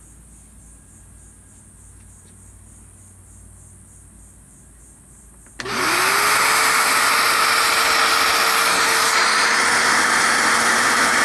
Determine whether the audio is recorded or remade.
recorded